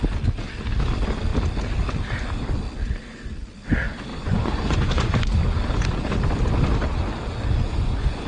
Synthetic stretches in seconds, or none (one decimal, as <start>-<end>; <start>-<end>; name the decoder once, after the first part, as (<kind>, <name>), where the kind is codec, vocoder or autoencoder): 4.1-5.1 (vocoder, Vocos); 7.6-8.3